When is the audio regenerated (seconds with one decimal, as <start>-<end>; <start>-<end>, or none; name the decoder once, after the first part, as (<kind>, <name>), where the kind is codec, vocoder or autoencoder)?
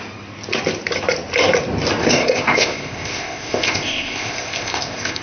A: 2.0-5.2 (codec, ZipCodec)